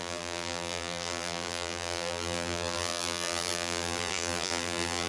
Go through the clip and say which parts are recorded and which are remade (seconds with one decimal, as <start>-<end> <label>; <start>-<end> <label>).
0.0-5.1 remade